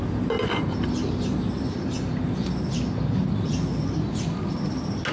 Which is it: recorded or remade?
recorded